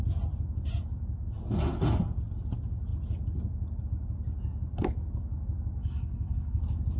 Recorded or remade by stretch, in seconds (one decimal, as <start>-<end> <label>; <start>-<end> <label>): 0.0-5.8 recorded; 5.8-6.6 remade; 6.6-7.0 recorded